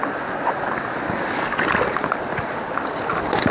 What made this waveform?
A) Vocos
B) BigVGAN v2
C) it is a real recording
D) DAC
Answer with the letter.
C